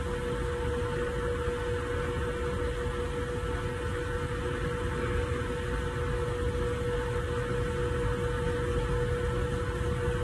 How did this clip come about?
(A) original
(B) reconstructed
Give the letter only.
A